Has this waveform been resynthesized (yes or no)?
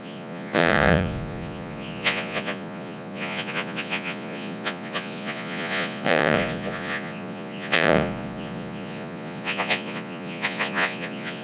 yes